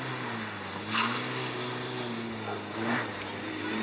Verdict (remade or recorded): recorded